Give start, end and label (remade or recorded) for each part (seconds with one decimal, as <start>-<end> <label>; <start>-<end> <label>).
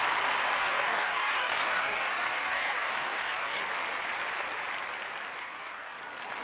0.0-0.6 recorded; 0.6-3.6 remade; 3.6-5.4 recorded; 5.4-6.0 remade; 6.0-6.4 recorded